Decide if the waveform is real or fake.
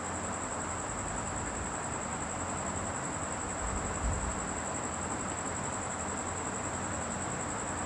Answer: real